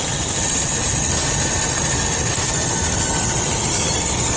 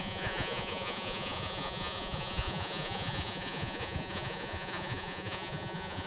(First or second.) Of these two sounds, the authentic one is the first